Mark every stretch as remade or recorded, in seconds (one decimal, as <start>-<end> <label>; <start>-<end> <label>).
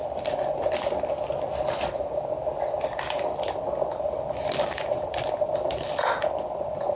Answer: 0.0-7.0 recorded